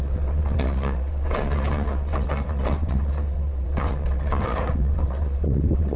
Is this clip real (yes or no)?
no